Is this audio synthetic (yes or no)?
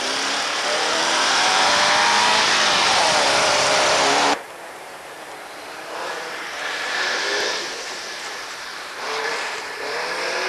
yes